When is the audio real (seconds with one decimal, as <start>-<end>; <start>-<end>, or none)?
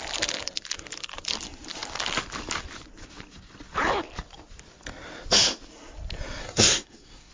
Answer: 0.0-6.4